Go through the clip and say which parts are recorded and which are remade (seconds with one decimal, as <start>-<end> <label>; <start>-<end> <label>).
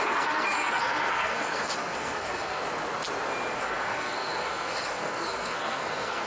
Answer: 0.0-2.6 remade; 2.6-3.6 recorded; 3.6-6.3 remade